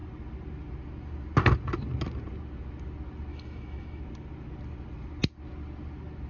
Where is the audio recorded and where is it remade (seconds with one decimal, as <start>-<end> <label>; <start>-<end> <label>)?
0.0-3.3 recorded; 3.3-4.0 remade; 4.0-6.3 recorded

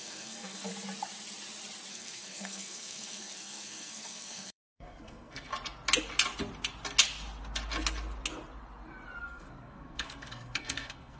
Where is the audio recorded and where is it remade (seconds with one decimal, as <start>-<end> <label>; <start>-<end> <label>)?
0.0-0.7 remade; 0.7-1.9 recorded; 1.9-5.5 remade; 5.5-9.2 recorded; 9.2-11.2 remade

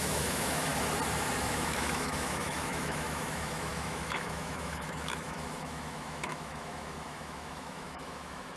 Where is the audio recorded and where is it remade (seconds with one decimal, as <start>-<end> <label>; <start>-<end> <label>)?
0.0-0.7 remade; 0.7-1.4 recorded; 1.4-8.6 remade

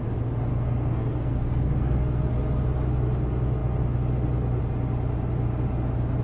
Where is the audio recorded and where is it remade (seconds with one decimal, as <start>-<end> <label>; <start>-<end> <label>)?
0.0-0.5 recorded; 0.5-2.3 remade; 2.3-6.2 recorded

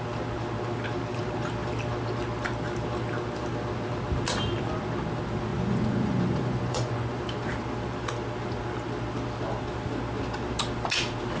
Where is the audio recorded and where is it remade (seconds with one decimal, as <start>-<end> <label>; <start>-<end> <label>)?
0.0-5.5 recorded; 5.5-7.2 remade; 7.2-11.4 recorded

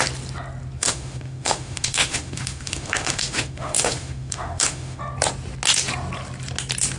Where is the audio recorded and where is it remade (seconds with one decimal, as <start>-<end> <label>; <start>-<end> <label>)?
0.0-0.8 recorded; 0.8-5.0 remade; 5.0-7.0 recorded

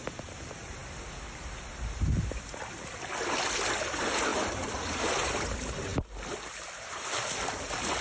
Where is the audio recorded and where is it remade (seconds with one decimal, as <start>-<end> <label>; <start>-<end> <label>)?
0.0-4.3 recorded; 4.3-5.5 remade; 5.5-8.0 recorded